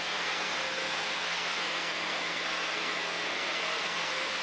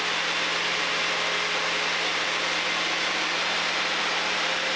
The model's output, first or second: first